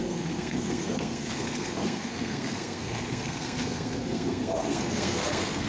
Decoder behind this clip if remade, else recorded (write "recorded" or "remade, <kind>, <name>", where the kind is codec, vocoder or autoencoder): remade, codec, SNAC